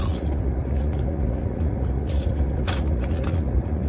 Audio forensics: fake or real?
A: fake